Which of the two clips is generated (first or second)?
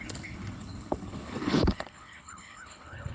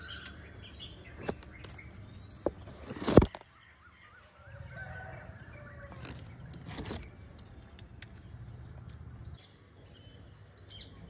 first